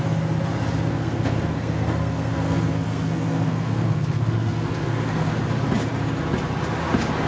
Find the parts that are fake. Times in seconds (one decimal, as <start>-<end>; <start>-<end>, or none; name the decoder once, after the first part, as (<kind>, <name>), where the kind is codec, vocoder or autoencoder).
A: 0.9-5.3 (codec, SNAC)